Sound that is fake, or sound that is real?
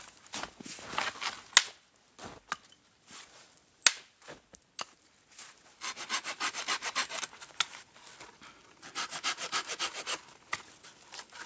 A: real